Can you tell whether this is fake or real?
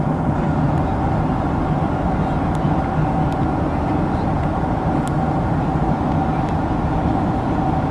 real